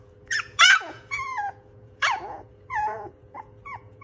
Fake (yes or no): yes